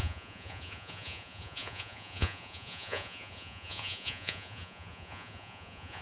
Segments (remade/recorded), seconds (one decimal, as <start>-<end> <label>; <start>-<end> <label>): 0.0-6.0 remade